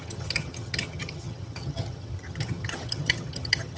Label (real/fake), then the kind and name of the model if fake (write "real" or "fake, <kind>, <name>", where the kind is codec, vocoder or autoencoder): fake, vocoder, HiFi-GAN